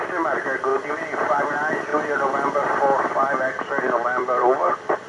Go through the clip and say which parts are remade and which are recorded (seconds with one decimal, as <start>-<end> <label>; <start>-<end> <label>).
0.0-1.9 recorded; 1.9-5.1 remade